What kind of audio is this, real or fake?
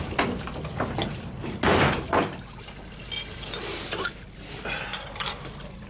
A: real